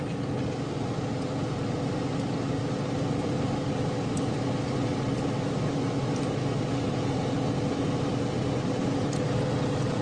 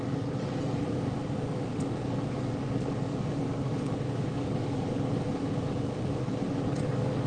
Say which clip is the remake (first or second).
second